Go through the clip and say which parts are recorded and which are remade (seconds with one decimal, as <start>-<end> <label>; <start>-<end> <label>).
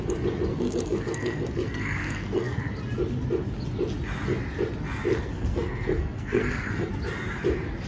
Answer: 0.0-0.5 recorded; 0.5-2.7 remade; 2.7-5.1 recorded; 5.1-6.9 remade; 6.9-7.9 recorded